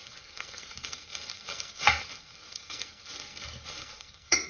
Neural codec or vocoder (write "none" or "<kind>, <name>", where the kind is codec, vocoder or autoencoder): codec, SNAC